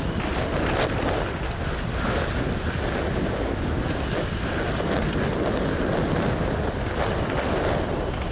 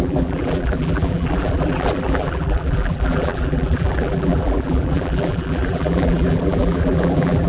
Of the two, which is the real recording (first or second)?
first